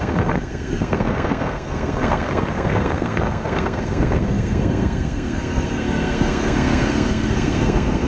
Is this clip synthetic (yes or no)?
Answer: yes